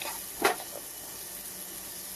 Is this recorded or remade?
recorded